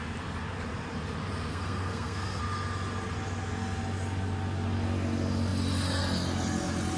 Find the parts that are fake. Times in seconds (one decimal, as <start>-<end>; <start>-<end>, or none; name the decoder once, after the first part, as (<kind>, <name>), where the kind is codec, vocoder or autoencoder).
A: 1.5-2.4 (codec, SNAC)